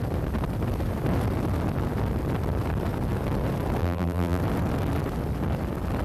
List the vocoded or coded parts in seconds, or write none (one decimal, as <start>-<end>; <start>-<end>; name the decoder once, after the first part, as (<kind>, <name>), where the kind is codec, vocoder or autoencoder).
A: 3.8-4.4 (vocoder, BigVGAN v2)

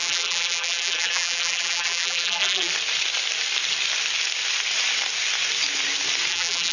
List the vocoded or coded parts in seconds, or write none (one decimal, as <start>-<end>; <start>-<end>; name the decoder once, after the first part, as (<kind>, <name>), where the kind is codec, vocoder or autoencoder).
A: 0.0-2.7 (vocoder, BigVGAN v2); 6.3-6.7

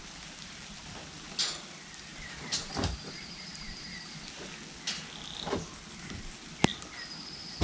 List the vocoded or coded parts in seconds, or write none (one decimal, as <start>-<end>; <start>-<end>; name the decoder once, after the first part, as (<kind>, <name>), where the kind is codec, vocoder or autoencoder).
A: 2.1-4.1 (vocoder, BigVGAN v2)

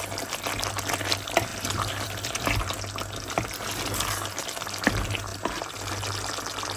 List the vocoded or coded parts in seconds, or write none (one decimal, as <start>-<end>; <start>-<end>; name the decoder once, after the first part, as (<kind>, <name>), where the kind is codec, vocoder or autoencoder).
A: 1.5-2.7 (vocoder, BigVGAN v2); 5.3-5.9

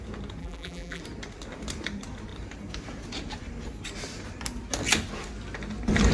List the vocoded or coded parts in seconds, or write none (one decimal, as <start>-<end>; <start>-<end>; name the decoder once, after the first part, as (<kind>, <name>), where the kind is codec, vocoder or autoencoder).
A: 0.4-1.0 (vocoder, BigVGAN v2)

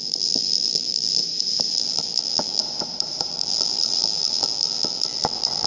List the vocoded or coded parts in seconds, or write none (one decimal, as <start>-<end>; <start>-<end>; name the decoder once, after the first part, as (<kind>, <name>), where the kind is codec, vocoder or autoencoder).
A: 0.0-1.2 (vocoder, BigVGAN v2); 1.7-2.6; 3.3-5.7

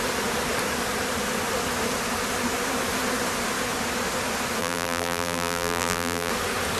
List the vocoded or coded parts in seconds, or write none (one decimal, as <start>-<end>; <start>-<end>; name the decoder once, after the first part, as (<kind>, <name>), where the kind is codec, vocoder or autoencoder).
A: 4.6-6.3 (vocoder, BigVGAN v2)